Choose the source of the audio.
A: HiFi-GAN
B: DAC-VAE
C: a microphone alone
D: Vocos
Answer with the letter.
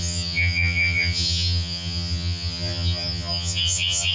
A